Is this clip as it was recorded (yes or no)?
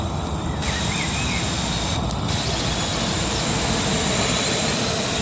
yes